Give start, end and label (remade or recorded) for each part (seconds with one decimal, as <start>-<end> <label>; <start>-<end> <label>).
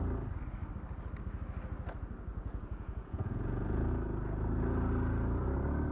0.0-2.3 recorded; 2.3-3.9 remade; 3.9-5.9 recorded